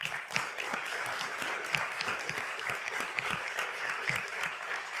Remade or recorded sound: remade